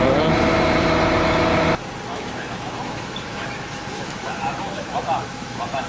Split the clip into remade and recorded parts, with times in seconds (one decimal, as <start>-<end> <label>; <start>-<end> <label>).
0.0-2.1 recorded; 2.1-5.9 remade